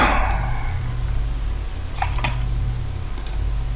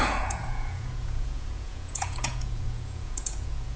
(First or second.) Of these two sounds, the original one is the first